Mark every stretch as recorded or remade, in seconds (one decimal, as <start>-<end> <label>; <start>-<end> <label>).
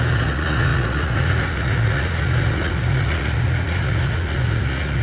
0.0-5.0 remade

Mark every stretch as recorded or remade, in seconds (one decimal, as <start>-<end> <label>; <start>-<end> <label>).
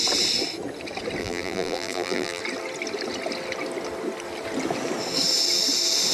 0.0-1.2 recorded; 1.2-2.4 remade; 2.4-6.1 recorded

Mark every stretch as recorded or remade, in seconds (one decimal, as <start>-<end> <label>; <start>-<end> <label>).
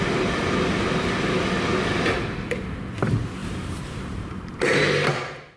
0.0-3.4 recorded; 3.4-4.3 remade; 4.3-5.6 recorded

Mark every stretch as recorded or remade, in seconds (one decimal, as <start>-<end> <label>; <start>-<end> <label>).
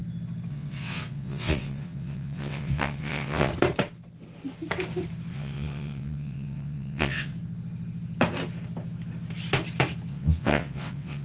0.0-0.5 recorded; 0.5-3.5 remade; 3.5-5.3 recorded; 5.3-7.3 remade; 7.3-10.1 recorded; 10.1-11.2 remade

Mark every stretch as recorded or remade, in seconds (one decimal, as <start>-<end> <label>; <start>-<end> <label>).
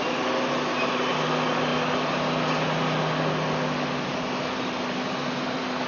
0.0-5.9 recorded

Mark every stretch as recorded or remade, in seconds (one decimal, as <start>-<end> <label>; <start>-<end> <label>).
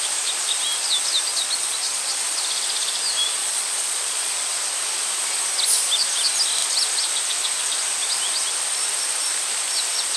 0.0-1.3 recorded; 1.3-2.1 remade; 2.1-3.4 recorded; 3.4-4.3 remade; 4.3-10.2 recorded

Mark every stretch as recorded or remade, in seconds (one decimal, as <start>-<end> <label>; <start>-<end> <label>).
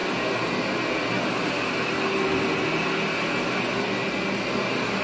0.0-5.0 recorded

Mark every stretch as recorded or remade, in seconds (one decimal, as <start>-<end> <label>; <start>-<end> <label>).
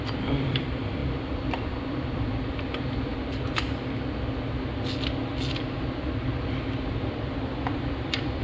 0.0-3.1 remade; 3.1-7.7 recorded; 7.7-8.4 remade